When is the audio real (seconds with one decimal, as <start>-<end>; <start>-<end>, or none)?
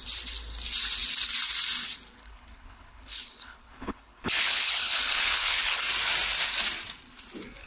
0.0-2.2; 5.8-7.7